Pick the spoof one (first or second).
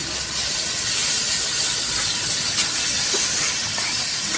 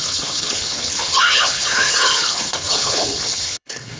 second